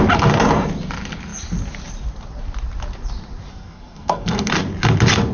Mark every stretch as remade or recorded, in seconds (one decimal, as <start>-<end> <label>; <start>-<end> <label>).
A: 0.0-3.5 recorded; 3.5-4.5 remade; 4.5-5.3 recorded